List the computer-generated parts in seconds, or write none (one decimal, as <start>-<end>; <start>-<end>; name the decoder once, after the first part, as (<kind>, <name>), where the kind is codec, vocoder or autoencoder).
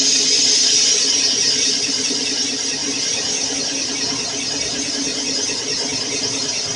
none